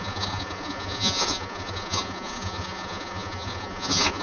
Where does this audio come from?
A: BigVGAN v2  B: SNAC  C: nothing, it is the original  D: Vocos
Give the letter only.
D